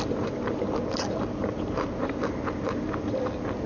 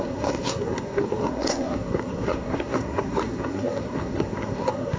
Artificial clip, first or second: second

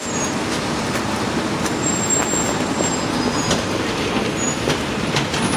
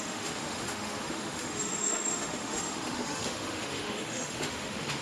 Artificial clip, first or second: second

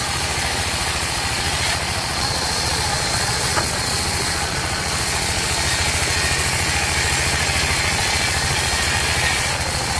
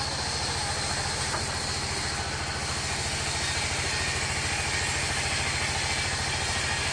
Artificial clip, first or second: first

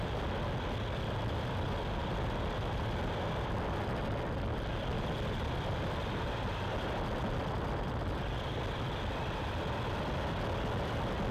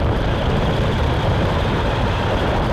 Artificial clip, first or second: second